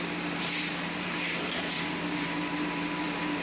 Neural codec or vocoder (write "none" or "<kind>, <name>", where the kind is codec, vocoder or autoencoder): vocoder, BigVGAN v2